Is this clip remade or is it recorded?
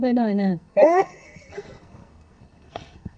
remade